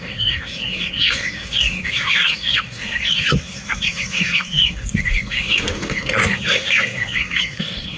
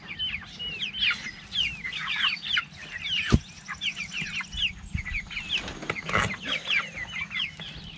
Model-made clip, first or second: first